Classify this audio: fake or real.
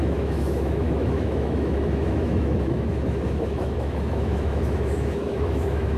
fake